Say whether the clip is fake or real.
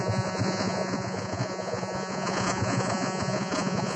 fake